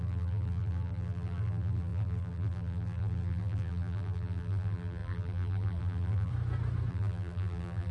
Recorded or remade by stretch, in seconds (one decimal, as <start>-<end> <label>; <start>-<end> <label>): 0.0-6.3 remade; 6.3-6.9 recorded; 6.9-7.9 remade